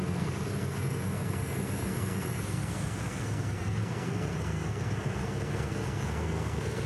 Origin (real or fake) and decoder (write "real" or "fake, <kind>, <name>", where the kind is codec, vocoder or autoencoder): fake, codec, SNAC